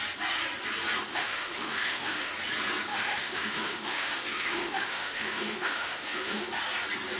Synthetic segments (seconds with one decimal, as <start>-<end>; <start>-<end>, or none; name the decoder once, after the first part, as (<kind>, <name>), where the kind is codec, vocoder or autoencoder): 1.1-2.3 (autoencoder, DAC-VAE); 2.9-6.5